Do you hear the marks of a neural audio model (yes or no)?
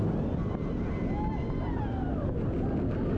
no